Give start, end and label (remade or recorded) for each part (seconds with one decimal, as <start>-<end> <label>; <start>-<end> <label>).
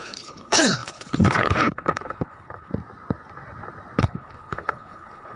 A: 0.0-2.7 remade; 2.7-4.0 recorded; 4.0-5.4 remade